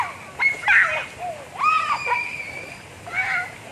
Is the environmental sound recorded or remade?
recorded